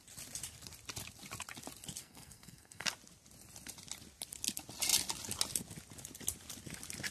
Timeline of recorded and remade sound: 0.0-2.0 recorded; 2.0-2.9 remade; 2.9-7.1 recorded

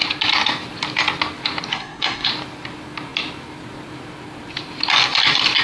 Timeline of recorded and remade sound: 0.0-1.7 recorded; 1.7-2.3 remade; 2.3-5.6 recorded

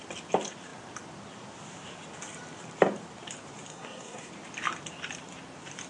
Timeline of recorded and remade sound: 0.0-3.7 recorded; 3.7-4.3 remade; 4.3-5.9 recorded

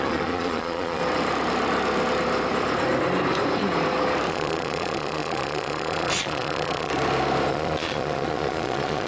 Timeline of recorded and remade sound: 0.0-1.0 remade; 1.0-4.3 recorded; 4.3-6.9 remade; 6.9-7.5 recorded; 7.5-9.1 remade

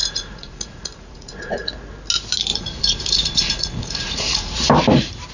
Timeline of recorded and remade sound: 0.0-1.7 remade; 1.7-2.5 recorded; 2.5-4.7 remade; 4.7-5.3 recorded

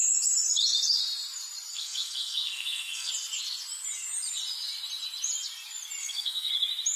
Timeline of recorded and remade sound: 0.0-1.7 recorded; 1.7-3.1 remade; 3.1-6.0 recorded; 6.0-6.5 remade; 6.5-7.0 recorded